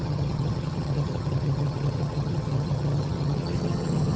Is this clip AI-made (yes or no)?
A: yes